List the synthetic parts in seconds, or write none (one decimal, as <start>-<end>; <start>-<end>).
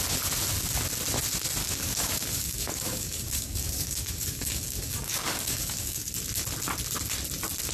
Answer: 1.6-6.1